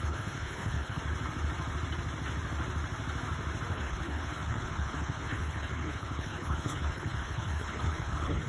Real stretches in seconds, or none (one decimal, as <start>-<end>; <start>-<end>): 1.0-3.7